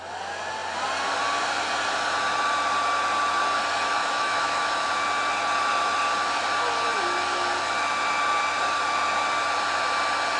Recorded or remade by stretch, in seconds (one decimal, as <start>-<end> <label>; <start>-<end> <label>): 0.0-4.0 recorded; 4.0-4.9 remade; 4.9-10.4 recorded